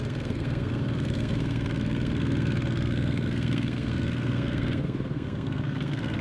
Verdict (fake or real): fake